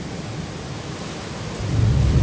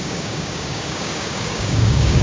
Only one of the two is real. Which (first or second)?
first